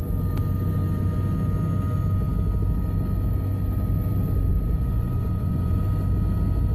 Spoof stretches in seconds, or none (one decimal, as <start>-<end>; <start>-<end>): 4.5-5.8